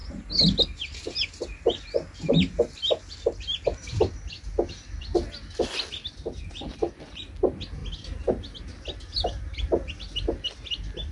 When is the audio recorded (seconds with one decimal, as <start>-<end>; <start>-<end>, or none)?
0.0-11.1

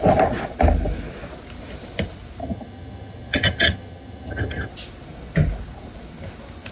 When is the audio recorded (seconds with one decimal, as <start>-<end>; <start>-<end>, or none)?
0.0-2.4; 4.7-6.7

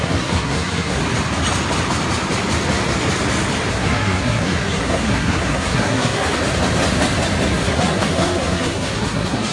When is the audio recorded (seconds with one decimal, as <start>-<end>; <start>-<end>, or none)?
1.0-3.7; 6.4-7.5

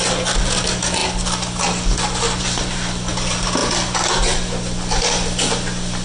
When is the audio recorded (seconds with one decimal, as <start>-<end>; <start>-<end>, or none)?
0.0-6.0

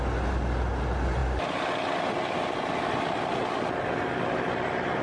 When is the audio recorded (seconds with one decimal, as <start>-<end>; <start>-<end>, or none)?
0.0-5.0

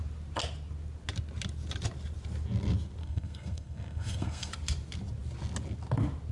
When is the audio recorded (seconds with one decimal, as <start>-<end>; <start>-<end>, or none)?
0.0-3.0; 4.5-6.3

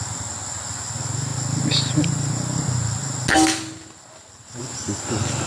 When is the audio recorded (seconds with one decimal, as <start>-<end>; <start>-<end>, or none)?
0.0-5.5